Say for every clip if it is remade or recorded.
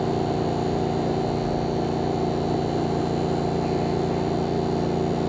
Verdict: recorded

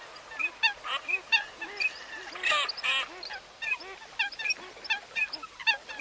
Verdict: recorded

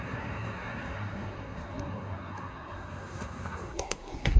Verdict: remade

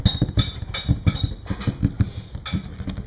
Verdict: recorded